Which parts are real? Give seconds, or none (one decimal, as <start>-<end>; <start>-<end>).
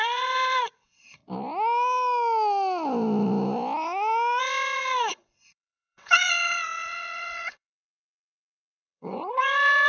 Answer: 1.2-4.4